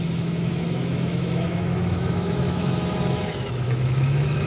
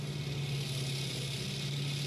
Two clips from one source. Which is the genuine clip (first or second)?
second